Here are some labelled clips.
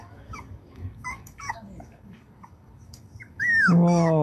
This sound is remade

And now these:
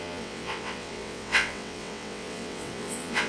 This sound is remade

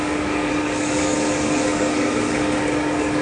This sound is remade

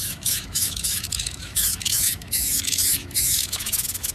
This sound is remade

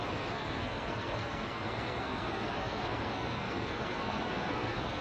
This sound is remade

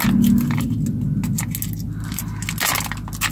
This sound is recorded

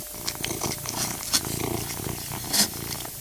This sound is recorded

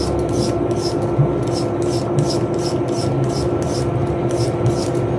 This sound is recorded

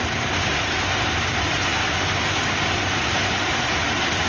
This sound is recorded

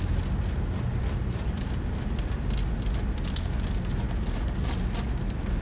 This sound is recorded